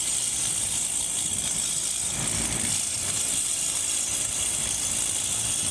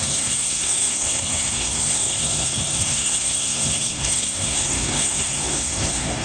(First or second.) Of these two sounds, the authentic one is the first